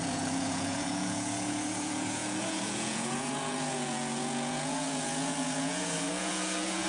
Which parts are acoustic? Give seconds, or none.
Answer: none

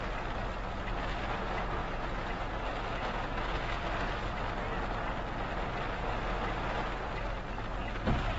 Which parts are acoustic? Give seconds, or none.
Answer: 0.0-1.8; 2.5-3.0; 3.8-8.4

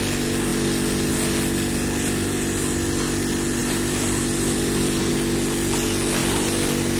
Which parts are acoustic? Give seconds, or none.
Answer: 0.0-3.6; 5.1-6.2

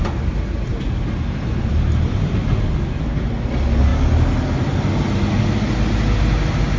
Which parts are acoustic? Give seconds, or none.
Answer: 0.0-6.8

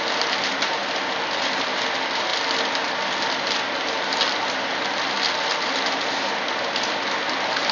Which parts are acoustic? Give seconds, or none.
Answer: 0.0-7.7

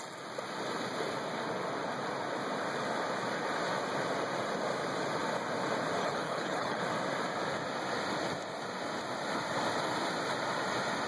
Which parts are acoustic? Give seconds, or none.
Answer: 0.0-6.0; 6.8-11.1